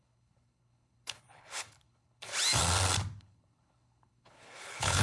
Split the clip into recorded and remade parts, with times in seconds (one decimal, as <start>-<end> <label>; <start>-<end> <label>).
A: 0.0-2.3 remade; 2.3-3.2 recorded; 3.2-5.0 remade